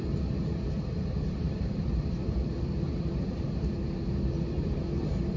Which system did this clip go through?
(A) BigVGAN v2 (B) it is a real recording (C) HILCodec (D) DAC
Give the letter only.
A